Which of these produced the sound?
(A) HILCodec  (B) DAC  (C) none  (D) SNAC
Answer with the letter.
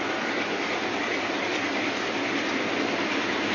C